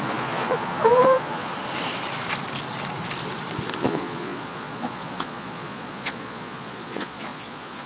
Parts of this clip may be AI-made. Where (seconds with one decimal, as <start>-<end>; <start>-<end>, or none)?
0.0-1.5; 3.8-7.9